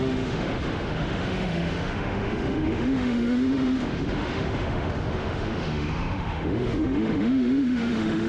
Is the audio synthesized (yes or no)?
yes